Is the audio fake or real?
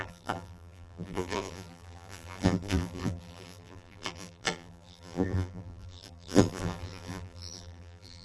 fake